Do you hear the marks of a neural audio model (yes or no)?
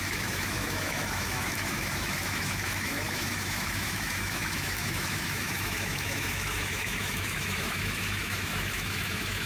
yes